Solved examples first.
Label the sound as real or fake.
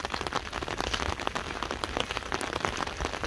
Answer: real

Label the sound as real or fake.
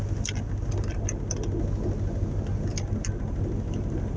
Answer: real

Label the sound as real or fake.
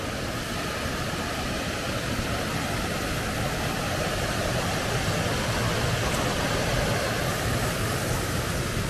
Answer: real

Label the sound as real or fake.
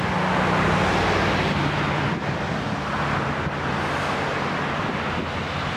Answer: real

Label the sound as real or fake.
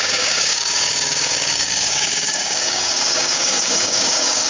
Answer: fake